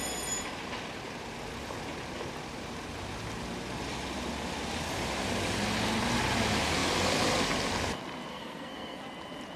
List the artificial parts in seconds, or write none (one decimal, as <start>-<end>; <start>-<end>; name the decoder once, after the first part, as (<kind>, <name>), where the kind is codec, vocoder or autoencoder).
8.3-9.0 (codec, SNAC)